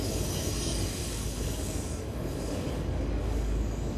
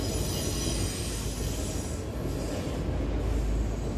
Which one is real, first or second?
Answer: second